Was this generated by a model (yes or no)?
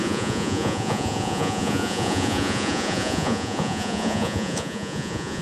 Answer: yes